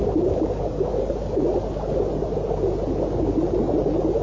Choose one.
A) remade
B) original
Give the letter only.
B